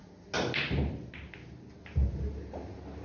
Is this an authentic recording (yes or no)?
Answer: yes